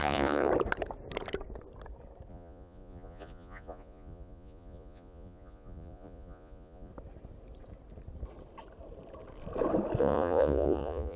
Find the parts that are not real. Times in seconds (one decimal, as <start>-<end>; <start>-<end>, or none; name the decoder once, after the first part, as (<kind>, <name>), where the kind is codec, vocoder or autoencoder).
0.0-0.5 (vocoder, Vocos); 2.3-6.9; 10.0-11.2